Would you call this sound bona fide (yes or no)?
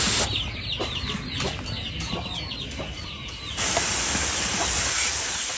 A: yes